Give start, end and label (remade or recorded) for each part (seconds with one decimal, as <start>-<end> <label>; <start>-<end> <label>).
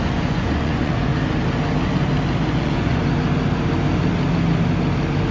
0.0-1.1 remade; 1.1-2.5 recorded; 2.5-3.0 remade; 3.0-5.3 recorded